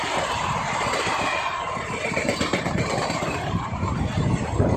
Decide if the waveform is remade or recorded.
remade